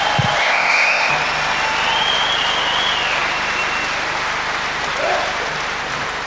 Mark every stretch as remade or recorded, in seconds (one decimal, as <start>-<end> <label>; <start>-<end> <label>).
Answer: 0.0-0.4 recorded; 0.4-1.1 remade; 1.1-6.3 recorded